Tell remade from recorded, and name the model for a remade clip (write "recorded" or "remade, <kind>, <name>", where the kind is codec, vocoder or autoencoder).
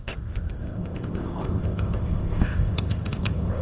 remade, codec, ZipCodec